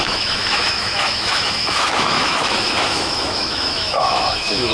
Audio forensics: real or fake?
fake